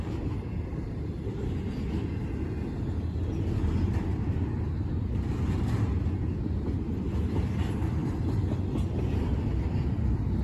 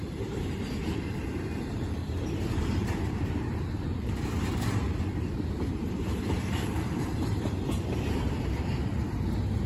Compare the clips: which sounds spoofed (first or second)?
second